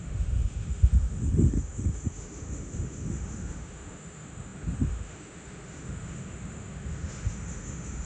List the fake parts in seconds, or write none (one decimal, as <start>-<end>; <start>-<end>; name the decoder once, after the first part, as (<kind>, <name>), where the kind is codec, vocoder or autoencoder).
0.0-8.1 (autoencoder, DAC-VAE)